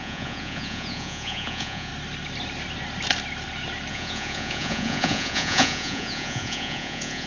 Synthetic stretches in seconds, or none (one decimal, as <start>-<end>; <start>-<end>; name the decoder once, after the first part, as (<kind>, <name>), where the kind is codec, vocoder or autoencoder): 0.0-1.9 (vocoder, Vocos); 3.9-7.3